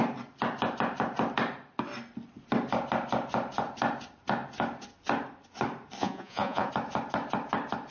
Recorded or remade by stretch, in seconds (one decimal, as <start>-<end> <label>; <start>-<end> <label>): 0.0-6.0 recorded; 6.0-6.7 remade; 6.7-7.9 recorded